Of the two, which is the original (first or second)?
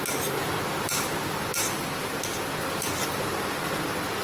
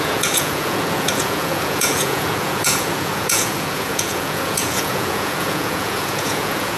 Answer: first